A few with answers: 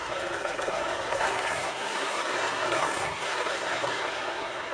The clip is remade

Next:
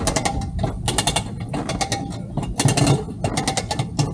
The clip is recorded